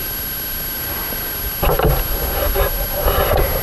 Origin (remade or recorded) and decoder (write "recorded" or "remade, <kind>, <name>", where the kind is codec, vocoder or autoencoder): recorded